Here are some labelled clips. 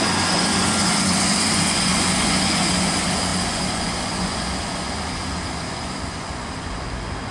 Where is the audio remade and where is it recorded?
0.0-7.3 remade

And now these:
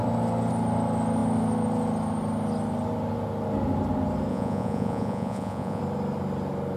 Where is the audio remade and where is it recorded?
0.0-4.3 recorded; 4.3-5.8 remade; 5.8-6.8 recorded